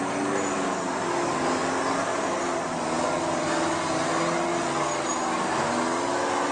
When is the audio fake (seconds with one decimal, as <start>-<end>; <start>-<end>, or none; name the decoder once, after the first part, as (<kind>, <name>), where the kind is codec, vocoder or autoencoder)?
none